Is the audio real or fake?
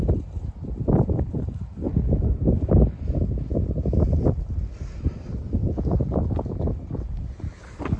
real